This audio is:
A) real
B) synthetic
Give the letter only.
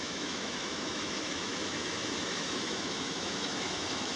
B